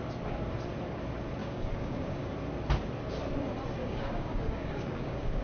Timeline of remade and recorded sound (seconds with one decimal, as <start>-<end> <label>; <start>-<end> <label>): 0.0-1.4 recorded; 1.4-2.3 remade; 2.3-3.8 recorded; 3.8-5.4 remade

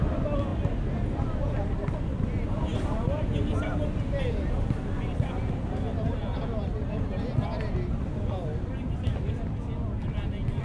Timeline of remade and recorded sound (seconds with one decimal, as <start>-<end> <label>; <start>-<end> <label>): 0.0-10.6 recorded

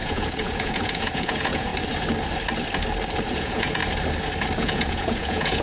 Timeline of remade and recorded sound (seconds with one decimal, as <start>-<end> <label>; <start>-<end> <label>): 0.0-1.7 remade; 1.7-3.3 recorded; 3.3-3.8 remade; 3.8-4.6 recorded; 4.6-5.6 remade

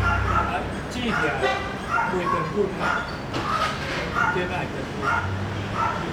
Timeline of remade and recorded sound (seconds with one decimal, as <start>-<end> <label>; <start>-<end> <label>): 0.0-6.1 recorded